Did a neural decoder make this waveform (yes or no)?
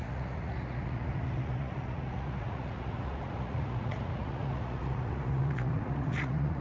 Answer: yes